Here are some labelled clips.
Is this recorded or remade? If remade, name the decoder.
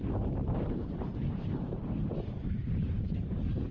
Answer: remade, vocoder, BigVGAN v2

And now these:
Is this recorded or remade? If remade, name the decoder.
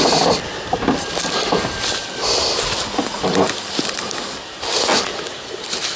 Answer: recorded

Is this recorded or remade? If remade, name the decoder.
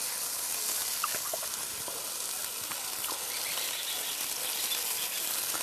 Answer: recorded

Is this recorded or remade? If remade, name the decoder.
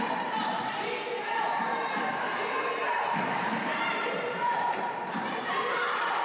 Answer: remade, vocoder, BigVGAN v2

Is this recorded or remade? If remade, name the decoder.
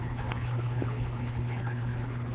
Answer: remade, codec, HILCodec